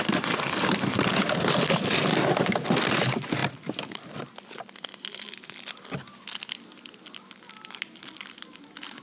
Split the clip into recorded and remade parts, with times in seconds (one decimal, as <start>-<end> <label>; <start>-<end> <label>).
0.0-3.4 recorded; 3.4-4.2 remade; 4.2-9.0 recorded